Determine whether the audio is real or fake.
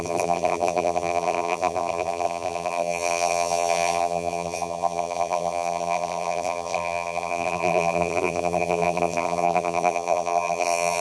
fake